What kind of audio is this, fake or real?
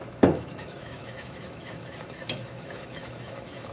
fake